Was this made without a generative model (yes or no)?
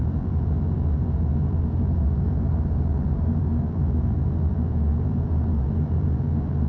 no